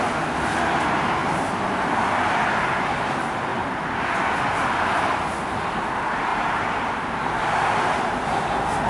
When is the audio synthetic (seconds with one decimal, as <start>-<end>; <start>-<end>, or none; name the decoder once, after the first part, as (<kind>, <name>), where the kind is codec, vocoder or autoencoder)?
1.2-1.8 (vocoder, BigVGAN v2); 6.3-8.2